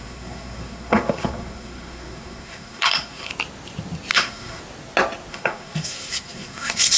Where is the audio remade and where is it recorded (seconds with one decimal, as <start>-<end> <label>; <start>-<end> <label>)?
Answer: 0.0-3.3 remade; 3.3-4.1 recorded; 4.1-4.6 remade; 4.6-5.3 recorded; 5.3-7.0 remade